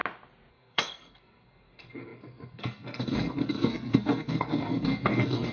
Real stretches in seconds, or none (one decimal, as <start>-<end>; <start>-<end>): 0.0-0.5